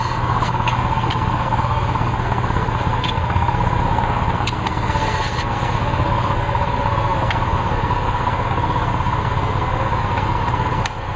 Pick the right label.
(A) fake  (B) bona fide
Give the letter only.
A